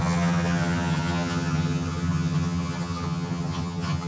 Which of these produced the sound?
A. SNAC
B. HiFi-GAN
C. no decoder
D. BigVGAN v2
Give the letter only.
B